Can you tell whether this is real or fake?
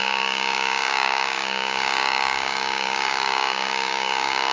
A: fake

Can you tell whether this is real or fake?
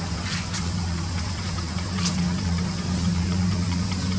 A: fake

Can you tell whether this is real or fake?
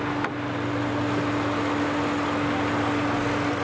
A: real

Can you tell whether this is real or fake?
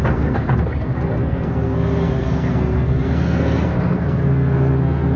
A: fake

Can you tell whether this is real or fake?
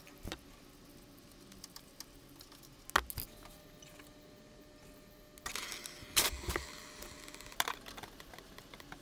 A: real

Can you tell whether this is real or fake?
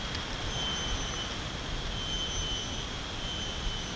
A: real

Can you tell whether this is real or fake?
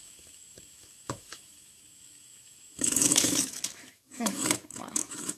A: fake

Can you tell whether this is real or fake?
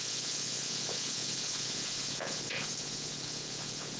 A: fake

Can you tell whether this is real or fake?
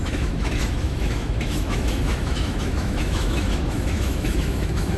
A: fake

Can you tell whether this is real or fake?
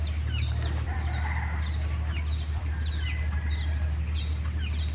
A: fake